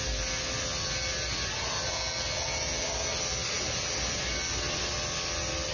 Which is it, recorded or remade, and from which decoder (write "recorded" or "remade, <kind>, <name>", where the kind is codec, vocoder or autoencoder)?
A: recorded